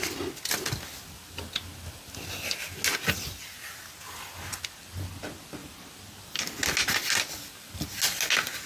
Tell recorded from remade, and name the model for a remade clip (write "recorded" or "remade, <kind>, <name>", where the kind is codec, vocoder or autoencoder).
recorded